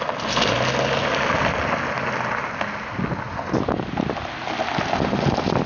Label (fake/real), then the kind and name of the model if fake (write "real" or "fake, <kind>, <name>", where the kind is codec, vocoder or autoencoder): real